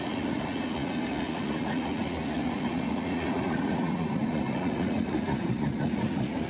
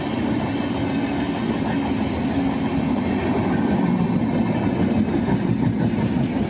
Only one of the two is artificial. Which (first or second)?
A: first